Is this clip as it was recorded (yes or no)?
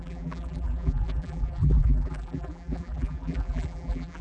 no